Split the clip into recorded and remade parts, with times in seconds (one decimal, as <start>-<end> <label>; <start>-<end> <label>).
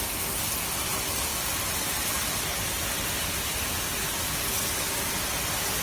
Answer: 0.0-5.8 recorded